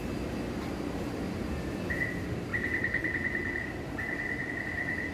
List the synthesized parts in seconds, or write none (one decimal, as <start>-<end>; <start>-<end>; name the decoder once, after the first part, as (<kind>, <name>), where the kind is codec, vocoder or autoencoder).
2.5-4.5 (vocoder, BigVGAN v2)